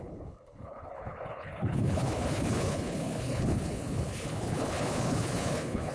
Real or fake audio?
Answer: fake